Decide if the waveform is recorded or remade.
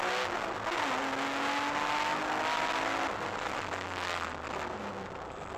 recorded